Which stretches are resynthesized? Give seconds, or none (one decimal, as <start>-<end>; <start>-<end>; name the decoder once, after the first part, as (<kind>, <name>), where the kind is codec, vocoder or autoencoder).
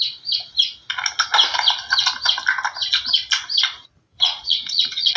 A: 4.1-5.2 (vocoder, Vocos)